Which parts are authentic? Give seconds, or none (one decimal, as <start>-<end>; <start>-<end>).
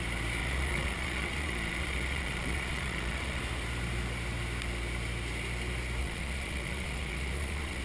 0.0-0.4; 3.4-6.0